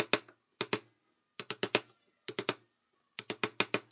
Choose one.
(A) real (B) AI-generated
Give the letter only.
A